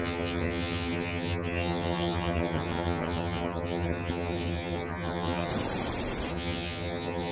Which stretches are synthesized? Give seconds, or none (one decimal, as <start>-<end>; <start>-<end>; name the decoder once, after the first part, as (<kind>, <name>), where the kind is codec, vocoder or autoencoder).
0.0-5.5 (vocoder, HiFi-GAN); 6.3-7.3